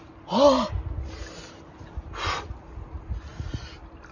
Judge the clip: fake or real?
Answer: real